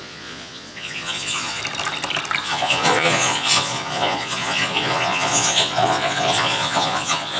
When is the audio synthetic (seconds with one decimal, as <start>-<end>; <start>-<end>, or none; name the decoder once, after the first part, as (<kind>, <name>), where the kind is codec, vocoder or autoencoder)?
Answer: 0.0-1.6 (vocoder, Vocos); 2.4-7.4

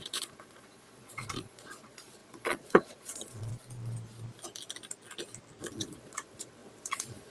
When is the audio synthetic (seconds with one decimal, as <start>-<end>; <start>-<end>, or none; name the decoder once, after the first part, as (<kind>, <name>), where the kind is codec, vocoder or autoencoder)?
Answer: 0.0-3.5 (vocoder, Vocos); 5.6-7.3

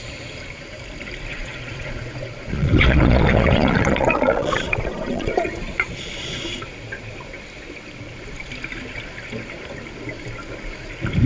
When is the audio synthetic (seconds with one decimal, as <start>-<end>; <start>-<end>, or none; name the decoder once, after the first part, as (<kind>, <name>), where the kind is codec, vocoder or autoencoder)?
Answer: 1.3-6.4 (vocoder, Vocos)

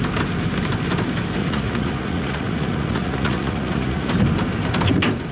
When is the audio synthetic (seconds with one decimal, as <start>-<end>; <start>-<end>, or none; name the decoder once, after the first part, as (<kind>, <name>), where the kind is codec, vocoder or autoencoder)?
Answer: 1.4-4.1 (vocoder, Vocos)

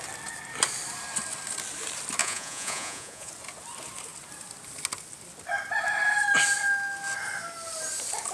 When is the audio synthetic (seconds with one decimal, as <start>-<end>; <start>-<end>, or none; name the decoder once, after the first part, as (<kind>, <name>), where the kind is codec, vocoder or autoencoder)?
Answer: 2.2-3.3 (vocoder, Vocos)

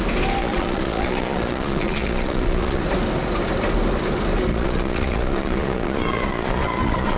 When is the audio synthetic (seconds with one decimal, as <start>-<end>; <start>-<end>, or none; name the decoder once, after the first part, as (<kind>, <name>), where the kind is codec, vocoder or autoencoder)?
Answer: 0.4-2.8 (vocoder, Vocos); 4.5-7.2

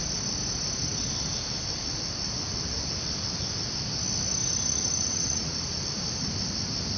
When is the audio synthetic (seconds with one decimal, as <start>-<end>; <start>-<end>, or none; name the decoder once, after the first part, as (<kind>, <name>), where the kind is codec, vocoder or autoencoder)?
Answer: 4.4-5.8 (vocoder, Vocos)